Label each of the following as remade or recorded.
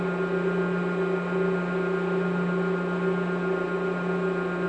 recorded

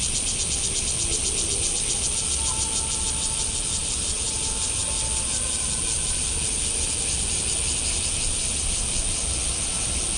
recorded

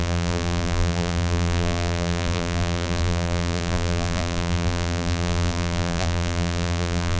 remade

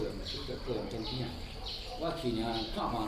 recorded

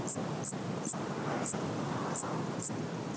remade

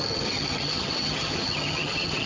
remade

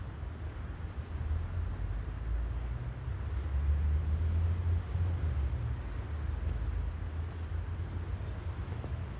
recorded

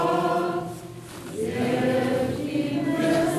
recorded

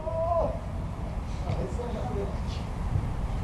recorded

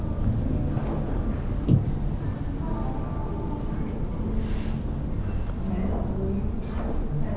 recorded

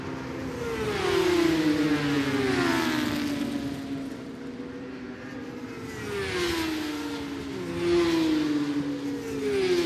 recorded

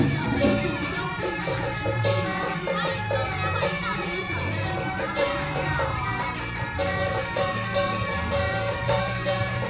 remade